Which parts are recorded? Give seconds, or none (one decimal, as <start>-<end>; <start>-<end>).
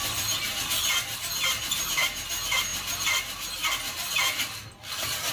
0.0-5.3